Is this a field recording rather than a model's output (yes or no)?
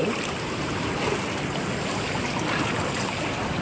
yes